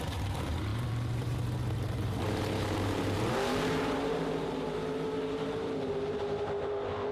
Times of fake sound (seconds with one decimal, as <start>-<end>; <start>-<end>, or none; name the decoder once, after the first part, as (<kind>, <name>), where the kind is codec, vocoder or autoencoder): 0.0-7.1 (vocoder, BigVGAN v2)